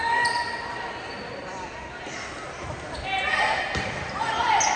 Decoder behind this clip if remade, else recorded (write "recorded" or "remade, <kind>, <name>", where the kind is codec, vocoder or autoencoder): recorded